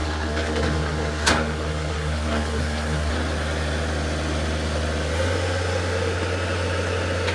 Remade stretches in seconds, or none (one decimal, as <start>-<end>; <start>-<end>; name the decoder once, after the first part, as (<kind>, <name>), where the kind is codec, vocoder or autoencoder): 0.0-3.1 (codec, SNAC)